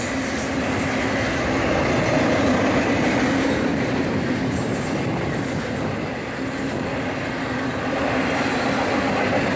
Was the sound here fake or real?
real